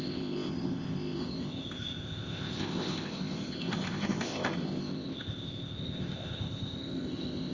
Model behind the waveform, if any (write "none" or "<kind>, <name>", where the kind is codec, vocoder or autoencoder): codec, ZipCodec